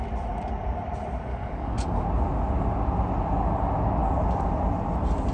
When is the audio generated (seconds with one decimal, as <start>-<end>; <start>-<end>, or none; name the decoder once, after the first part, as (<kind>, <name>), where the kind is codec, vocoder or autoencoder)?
1.3-2.0 (codec, DAC)